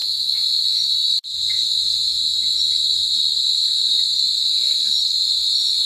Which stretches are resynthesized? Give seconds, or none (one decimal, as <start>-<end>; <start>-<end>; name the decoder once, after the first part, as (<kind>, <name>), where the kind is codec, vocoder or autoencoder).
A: 1.1-2.1 (vocoder, BigVGAN v2)